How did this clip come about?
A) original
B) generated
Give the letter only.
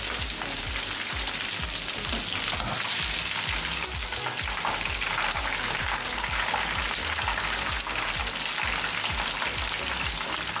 A